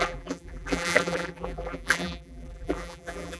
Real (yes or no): no